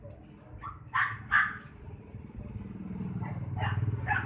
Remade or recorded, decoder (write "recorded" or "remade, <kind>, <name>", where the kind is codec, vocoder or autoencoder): remade, vocoder, BigVGAN v2